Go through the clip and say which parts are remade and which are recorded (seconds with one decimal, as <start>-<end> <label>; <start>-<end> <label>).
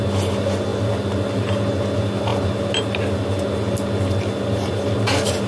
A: 0.0-5.5 recorded